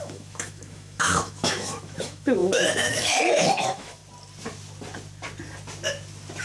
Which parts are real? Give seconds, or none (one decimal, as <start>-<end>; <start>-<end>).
4.0-6.4